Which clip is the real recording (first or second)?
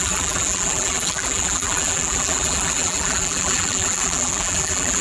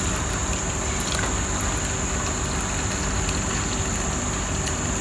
second